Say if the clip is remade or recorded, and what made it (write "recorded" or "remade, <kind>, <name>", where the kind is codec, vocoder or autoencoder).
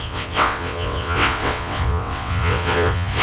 remade, vocoder, WaveNeXt